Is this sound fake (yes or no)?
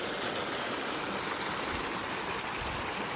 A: no